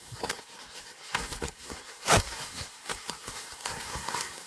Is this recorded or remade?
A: remade